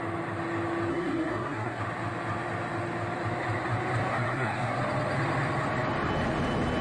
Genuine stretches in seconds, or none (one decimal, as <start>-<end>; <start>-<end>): 0.0-0.9; 1.8-4.1; 4.8-6.8